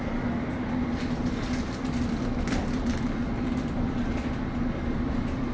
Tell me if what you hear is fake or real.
real